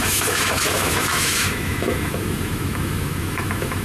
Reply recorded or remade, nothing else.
remade